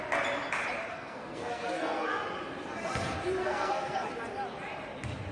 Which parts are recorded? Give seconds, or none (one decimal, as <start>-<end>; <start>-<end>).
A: 0.0-0.9; 2.2-3.4; 4.1-5.3